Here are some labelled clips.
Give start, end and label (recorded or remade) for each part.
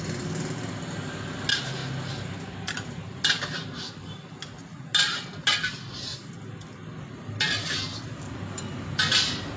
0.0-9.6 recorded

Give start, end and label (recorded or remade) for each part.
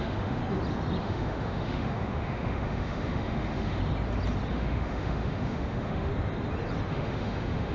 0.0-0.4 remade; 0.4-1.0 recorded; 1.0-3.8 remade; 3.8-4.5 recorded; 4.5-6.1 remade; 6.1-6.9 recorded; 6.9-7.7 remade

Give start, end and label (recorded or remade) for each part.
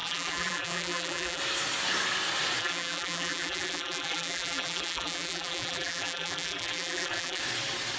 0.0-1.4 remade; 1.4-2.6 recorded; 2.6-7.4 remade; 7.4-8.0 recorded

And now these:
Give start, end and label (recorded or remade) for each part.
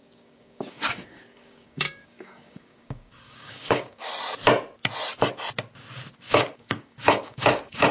0.0-4.1 remade; 4.1-6.3 recorded; 6.3-7.9 remade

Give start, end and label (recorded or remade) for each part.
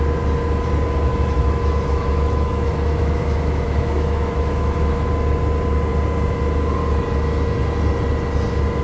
0.0-1.1 recorded; 1.1-5.1 remade; 5.1-8.8 recorded